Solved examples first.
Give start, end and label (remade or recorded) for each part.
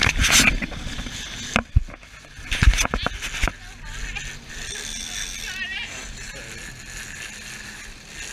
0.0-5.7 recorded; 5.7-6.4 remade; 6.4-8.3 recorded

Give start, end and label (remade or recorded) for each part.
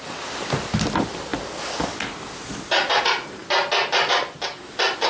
0.0-5.1 recorded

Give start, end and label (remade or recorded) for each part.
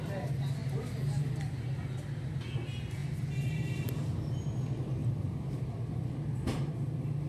0.0-5.0 recorded; 5.0-5.7 remade; 5.7-7.3 recorded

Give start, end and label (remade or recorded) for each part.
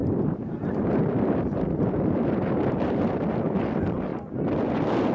0.0-3.1 remade; 3.1-4.1 recorded; 4.1-4.6 remade; 4.6-5.1 recorded